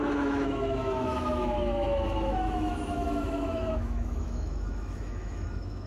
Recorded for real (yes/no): no